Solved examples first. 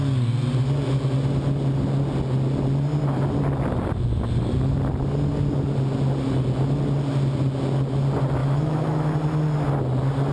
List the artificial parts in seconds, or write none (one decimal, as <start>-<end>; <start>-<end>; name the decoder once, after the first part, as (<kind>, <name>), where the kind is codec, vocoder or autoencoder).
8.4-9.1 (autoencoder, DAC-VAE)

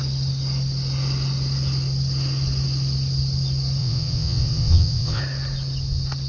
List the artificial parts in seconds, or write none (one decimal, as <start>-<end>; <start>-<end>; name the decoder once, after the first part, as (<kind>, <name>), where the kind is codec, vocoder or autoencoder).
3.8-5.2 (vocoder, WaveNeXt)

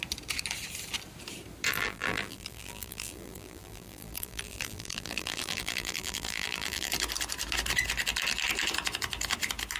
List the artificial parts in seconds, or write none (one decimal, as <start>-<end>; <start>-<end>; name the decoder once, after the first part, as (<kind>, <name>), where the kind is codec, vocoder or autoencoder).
1.7-6.9 (vocoder, BigVGAN v2)